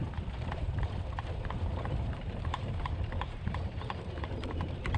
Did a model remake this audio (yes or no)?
yes